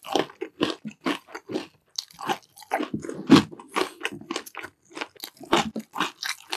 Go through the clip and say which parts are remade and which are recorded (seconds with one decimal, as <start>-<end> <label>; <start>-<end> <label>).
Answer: 0.0-6.6 recorded

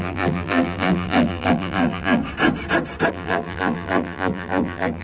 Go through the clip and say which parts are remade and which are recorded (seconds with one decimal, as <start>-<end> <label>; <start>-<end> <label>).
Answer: 0.0-2.2 remade; 2.2-3.1 recorded; 3.1-5.0 remade